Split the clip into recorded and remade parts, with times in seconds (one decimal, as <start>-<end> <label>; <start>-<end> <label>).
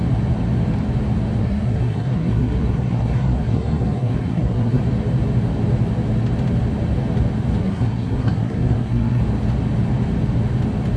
0.0-1.4 recorded; 1.4-4.8 remade; 4.8-7.6 recorded; 7.6-9.2 remade; 9.2-11.0 recorded